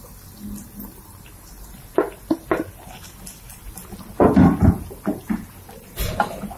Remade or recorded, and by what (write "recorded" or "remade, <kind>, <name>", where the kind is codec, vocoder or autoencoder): recorded